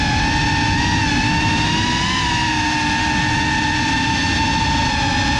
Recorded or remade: recorded